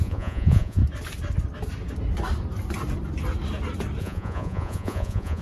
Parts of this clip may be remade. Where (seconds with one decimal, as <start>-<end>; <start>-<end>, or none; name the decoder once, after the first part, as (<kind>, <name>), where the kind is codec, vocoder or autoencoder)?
0.0-0.8 (vocoder, Vocos); 4.0-5.4